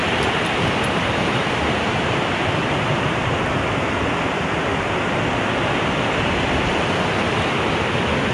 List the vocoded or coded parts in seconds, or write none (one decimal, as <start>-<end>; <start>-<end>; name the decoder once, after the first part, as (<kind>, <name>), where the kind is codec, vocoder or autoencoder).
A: none